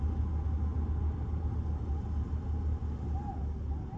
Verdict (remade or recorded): recorded